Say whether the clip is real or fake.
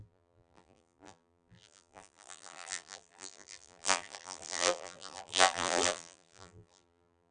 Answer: fake